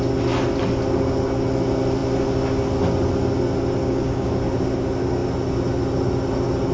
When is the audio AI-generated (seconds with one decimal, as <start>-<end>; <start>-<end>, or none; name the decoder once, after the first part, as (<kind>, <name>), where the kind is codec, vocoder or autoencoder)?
3.8-4.3 (codec, DAC)